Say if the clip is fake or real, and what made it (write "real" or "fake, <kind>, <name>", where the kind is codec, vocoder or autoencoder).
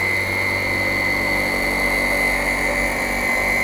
real